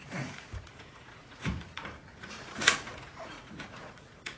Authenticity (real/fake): fake